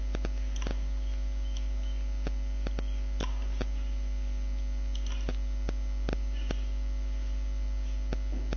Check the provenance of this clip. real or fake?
real